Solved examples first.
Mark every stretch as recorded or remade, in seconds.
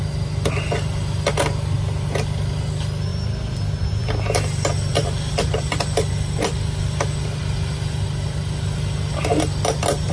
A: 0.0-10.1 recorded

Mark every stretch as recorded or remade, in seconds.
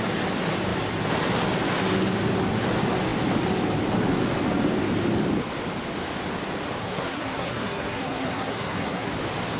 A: 0.0-6.8 recorded; 6.8-9.1 remade; 9.1-9.6 recorded